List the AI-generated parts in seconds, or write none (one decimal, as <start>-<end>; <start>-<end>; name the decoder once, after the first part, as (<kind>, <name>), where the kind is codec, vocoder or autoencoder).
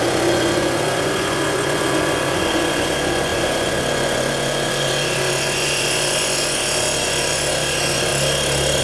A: 0.0-8.1 (vocoder, Vocos)